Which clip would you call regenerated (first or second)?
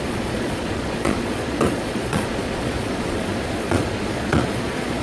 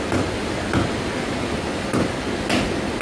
first